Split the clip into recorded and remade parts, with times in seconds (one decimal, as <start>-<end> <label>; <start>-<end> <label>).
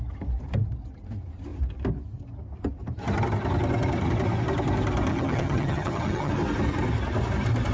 0.0-5.1 recorded; 5.1-6.3 remade; 6.3-7.7 recorded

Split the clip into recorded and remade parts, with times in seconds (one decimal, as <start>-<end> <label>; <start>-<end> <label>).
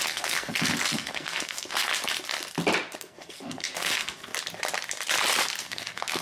0.0-1.9 remade; 1.9-3.0 recorded; 3.0-4.3 remade; 4.3-5.6 recorded; 5.6-6.2 remade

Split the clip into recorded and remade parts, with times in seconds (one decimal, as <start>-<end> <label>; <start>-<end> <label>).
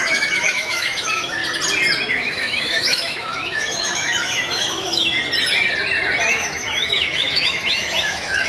0.0-1.4 remade; 1.4-2.1 recorded; 2.1-5.2 remade; 5.2-6.3 recorded; 6.3-8.5 remade